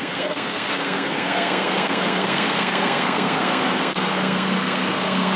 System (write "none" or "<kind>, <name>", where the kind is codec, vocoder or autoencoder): codec, SNAC